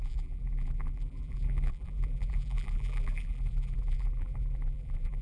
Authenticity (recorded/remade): remade